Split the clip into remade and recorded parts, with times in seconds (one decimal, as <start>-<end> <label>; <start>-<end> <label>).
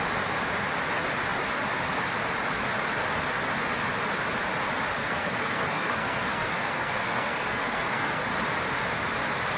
0.0-5.0 recorded; 5.0-8.2 remade; 8.2-9.6 recorded